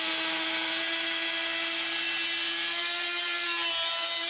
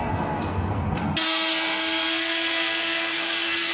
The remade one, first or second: second